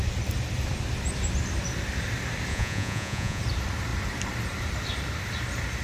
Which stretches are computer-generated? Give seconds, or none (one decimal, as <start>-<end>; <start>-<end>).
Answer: 2.5-3.4